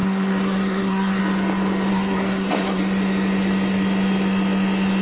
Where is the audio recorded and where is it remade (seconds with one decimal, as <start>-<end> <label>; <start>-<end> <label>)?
0.0-1.2 remade; 1.2-1.9 recorded; 1.9-2.8 remade; 2.8-5.0 recorded